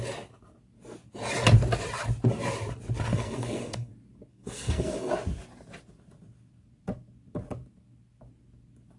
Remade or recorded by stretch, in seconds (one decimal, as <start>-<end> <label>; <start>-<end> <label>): 0.0-3.1 recorded; 3.1-3.9 remade; 3.9-4.3 recorded; 4.3-5.1 remade; 5.1-9.0 recorded